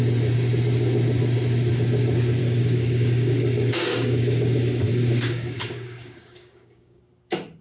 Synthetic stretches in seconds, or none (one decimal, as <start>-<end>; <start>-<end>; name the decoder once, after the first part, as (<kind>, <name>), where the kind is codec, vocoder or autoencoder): 2.4-7.0 (codec, DAC)